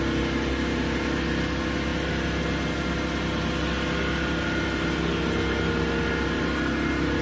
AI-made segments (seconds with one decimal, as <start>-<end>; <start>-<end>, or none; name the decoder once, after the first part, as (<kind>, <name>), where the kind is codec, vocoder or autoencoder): none